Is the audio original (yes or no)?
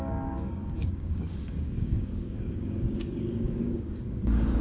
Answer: no